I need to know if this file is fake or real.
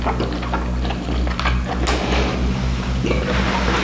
real